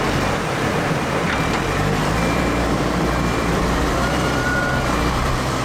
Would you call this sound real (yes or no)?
no